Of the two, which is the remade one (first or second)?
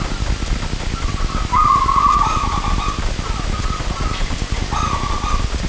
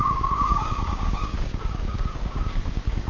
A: second